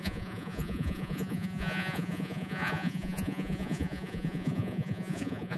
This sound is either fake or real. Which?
fake